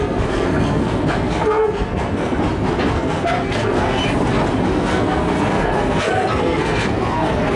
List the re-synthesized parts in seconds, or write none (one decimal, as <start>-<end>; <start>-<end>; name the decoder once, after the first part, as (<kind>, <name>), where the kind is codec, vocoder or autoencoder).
0.0-2.4 (codec, SNAC); 2.9-4.0; 4.6-7.6